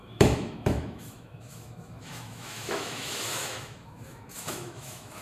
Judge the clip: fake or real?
fake